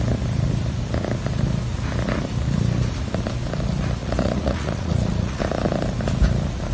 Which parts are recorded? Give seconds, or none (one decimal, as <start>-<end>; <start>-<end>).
0.0-4.0; 5.4-6.7

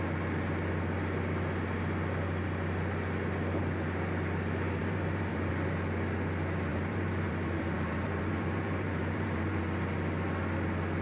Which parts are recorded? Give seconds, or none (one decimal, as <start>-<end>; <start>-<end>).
0.0-4.8; 5.5-6.7; 9.6-11.0

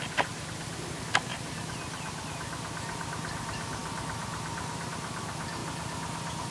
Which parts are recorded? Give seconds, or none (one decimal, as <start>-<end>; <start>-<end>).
0.0-1.3; 2.3-5.6